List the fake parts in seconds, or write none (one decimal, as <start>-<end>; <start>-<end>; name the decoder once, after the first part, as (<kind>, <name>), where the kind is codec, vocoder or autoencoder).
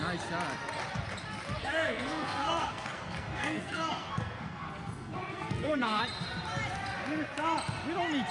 1.6-6.0 (codec, SNAC)